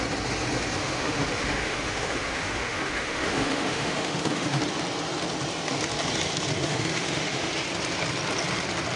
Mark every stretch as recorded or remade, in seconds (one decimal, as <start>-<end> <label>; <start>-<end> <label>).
0.0-0.8 recorded; 0.8-4.6 remade; 4.6-6.6 recorded; 6.6-7.5 remade; 7.5-9.0 recorded